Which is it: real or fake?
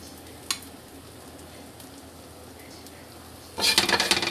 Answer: real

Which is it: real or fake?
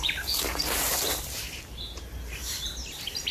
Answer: fake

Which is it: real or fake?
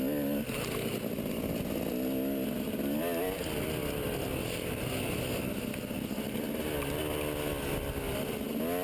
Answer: real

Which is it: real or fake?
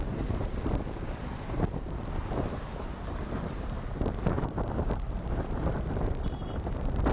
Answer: fake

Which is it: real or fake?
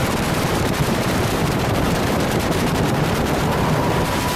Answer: fake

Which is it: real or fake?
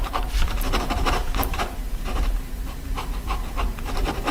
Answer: fake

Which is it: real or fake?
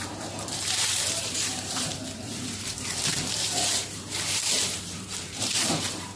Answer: fake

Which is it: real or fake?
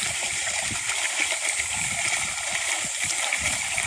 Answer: fake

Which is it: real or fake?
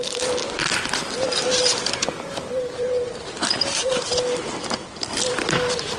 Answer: fake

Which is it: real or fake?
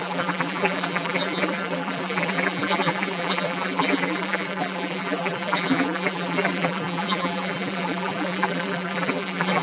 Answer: fake